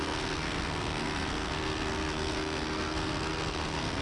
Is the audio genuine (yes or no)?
no